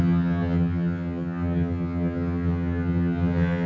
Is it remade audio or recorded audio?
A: remade